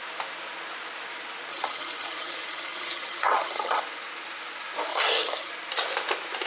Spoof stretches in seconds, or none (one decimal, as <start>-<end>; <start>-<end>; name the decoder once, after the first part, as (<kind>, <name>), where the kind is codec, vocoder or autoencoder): 1.5-3.8 (vocoder, HiFi-GAN); 4.9-5.5

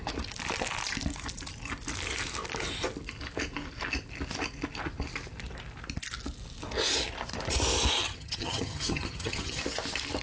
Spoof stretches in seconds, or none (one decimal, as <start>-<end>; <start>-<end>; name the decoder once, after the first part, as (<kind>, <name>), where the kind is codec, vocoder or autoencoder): 8.0-9.6 (vocoder, HiFi-GAN)

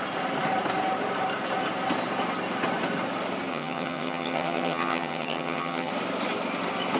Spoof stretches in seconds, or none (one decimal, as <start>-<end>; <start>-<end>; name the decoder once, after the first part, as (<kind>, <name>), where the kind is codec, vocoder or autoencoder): 3.5-5.9 (vocoder, HiFi-GAN)

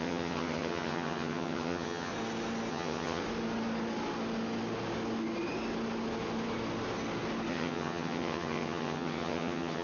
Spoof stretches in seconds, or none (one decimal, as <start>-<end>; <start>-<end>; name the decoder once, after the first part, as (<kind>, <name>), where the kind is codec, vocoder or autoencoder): 0.0-2.1 (vocoder, HiFi-GAN); 2.7-3.2; 7.5-9.8